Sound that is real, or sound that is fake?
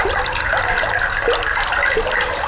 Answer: real